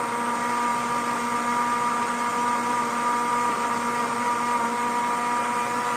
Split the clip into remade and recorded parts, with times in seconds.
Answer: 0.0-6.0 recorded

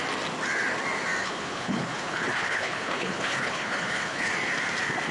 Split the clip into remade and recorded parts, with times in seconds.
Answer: 0.0-1.2 recorded; 1.2-4.3 remade; 4.3-5.1 recorded

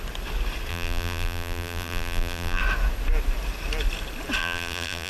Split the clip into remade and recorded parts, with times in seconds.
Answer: 0.0-0.7 recorded; 0.7-2.6 remade; 2.6-4.4 recorded; 4.4-5.1 remade

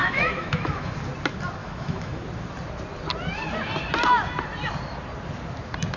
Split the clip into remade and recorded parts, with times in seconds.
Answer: 0.0-0.9 remade; 0.9-1.6 recorded; 1.6-2.2 remade; 2.2-6.0 recorded

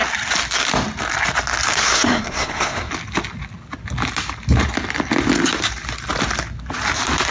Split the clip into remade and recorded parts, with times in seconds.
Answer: 0.0-1.9 recorded; 1.9-2.9 remade; 2.9-7.3 recorded

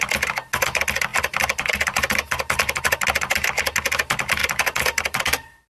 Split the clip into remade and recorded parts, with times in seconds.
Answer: 0.0-1.1 recorded; 1.1-2.8 remade; 2.8-4.4 recorded; 4.4-5.2 remade; 5.2-5.8 recorded

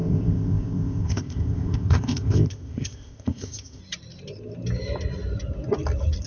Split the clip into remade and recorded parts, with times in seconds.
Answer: 0.0-3.8 remade; 3.8-6.3 recorded